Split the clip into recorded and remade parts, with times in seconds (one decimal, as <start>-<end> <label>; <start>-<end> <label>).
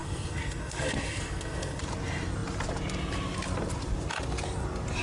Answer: 0.0-1.8 remade; 1.8-5.0 recorded